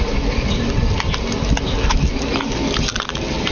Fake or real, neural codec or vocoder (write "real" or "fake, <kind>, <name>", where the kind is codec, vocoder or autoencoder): real